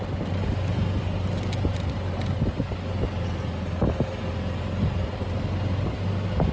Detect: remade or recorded recorded